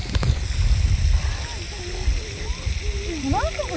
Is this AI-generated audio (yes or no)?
no